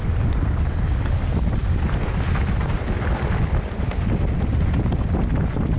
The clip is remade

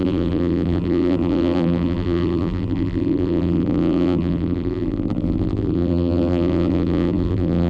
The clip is remade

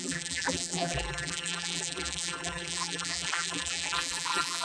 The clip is remade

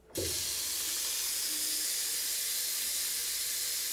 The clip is recorded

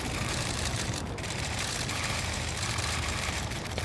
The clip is remade